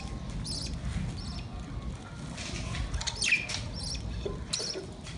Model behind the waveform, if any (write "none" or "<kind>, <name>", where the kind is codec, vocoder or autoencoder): none